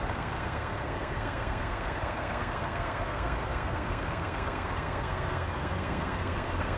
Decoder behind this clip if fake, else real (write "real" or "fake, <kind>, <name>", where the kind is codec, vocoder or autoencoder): fake, codec, SNAC